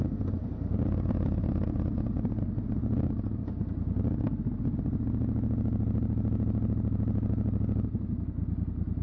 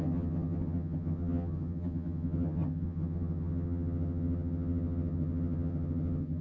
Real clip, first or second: first